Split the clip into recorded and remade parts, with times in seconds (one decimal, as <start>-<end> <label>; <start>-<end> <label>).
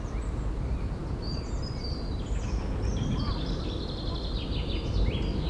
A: 0.0-2.9 recorded; 2.9-3.6 remade; 3.6-5.5 recorded